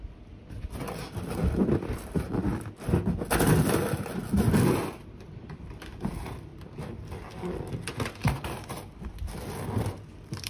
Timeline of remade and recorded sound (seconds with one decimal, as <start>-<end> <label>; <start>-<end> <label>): 0.0-2.5 remade; 2.5-5.3 recorded; 5.3-6.5 remade; 6.5-10.1 recorded; 10.1-10.5 remade